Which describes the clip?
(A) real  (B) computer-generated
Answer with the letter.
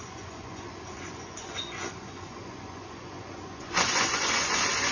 B